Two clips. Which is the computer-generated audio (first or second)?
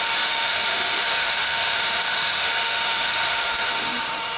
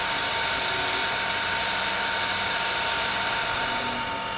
first